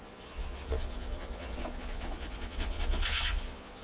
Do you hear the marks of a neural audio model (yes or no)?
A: yes